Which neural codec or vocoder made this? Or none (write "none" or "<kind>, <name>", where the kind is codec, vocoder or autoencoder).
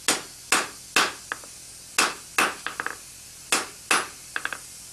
none